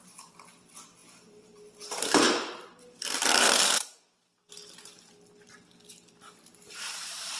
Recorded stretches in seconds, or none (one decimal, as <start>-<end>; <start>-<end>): 0.0-7.4